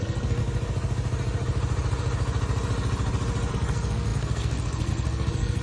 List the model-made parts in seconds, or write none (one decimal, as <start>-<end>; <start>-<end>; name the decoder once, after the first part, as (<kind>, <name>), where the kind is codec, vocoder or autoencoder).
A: 0.0-0.4 (codec, SNAC); 3.5-5.6